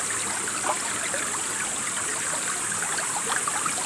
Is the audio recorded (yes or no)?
yes